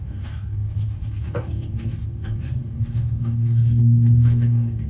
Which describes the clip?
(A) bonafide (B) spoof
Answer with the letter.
B